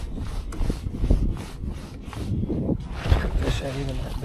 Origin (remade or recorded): recorded